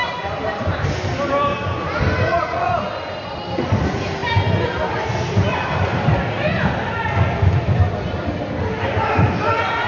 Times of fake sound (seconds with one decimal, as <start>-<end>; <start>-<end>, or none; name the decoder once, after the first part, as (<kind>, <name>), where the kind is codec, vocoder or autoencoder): 2.3-2.9 (vocoder, Vocos)